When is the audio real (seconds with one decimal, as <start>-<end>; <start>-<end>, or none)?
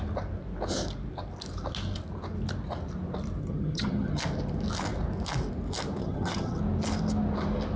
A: 0.0-3.4; 4.2-6.0; 6.6-7.8